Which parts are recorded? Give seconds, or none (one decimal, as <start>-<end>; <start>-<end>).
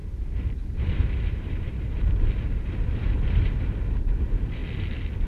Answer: 4.6-5.3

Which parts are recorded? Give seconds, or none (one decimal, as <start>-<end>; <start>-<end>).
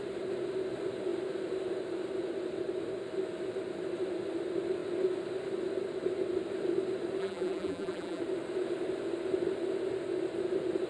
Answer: 0.0-7.2; 8.2-10.9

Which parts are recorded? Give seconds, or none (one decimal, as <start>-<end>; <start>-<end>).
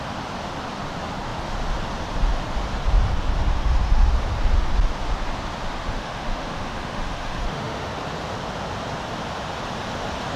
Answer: 0.0-3.5; 4.1-6.0; 7.9-10.4